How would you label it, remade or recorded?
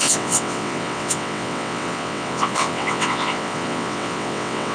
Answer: remade